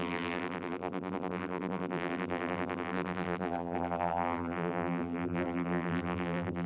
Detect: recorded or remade remade